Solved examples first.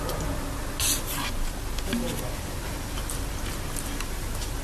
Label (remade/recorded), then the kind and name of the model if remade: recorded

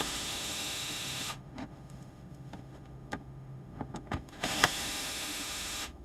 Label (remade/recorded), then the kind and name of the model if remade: remade, autoencoder, DAC-VAE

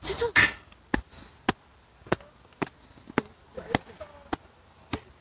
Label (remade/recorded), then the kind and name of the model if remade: recorded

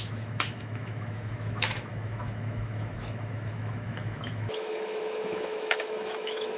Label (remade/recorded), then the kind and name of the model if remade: remade, autoencoder, DAC-VAE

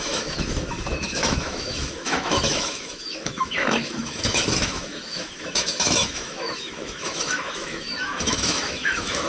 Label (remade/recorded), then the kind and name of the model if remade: remade, autoencoder, DAC-VAE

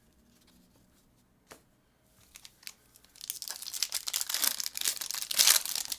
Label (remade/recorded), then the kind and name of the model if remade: recorded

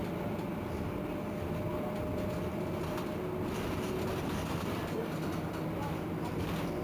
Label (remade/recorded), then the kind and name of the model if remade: recorded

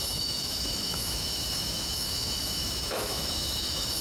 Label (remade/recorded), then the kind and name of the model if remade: remade, autoencoder, DAC-VAE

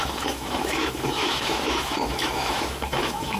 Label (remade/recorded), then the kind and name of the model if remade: remade, autoencoder, DAC-VAE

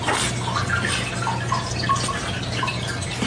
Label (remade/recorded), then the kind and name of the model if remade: recorded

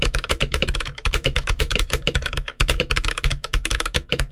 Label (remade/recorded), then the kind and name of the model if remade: remade, autoencoder, DAC-VAE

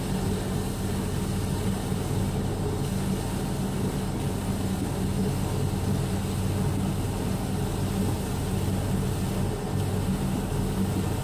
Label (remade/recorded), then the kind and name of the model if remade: recorded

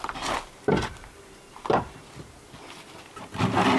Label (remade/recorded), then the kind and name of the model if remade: recorded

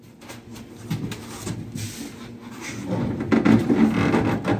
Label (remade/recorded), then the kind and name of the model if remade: recorded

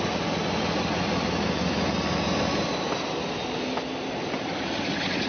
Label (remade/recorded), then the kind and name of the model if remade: recorded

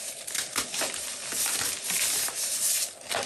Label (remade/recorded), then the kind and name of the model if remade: recorded